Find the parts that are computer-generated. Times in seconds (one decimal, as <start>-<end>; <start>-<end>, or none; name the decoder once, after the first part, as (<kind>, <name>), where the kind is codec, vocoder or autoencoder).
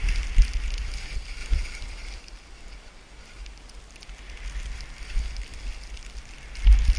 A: 1.4-2.2 (vocoder, BigVGAN v2); 5.5-6.2